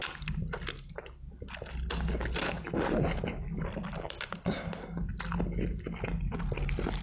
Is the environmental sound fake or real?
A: real